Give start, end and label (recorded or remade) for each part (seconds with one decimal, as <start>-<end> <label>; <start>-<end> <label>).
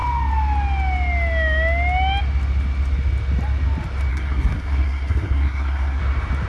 0.0-4.1 recorded; 4.1-6.0 remade; 6.0-6.5 recorded